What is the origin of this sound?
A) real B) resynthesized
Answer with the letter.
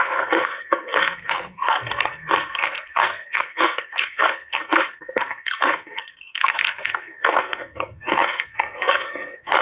B